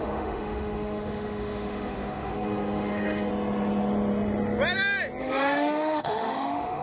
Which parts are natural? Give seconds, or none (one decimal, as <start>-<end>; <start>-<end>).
3.3-5.2